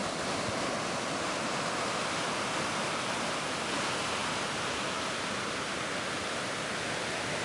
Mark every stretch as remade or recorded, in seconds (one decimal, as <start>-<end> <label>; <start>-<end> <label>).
0.0-7.4 recorded